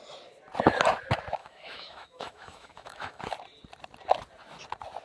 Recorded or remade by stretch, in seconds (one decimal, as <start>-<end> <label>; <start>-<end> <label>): 0.0-1.4 recorded; 1.4-3.2 remade; 3.2-5.0 recorded